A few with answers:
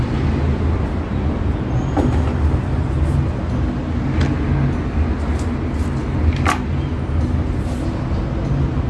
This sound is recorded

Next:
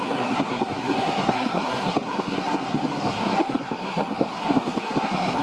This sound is remade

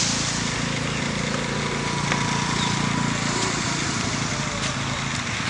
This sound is recorded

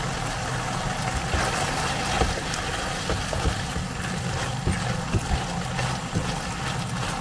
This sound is recorded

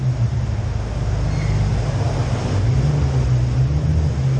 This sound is recorded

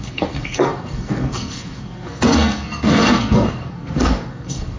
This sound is remade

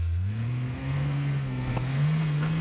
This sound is remade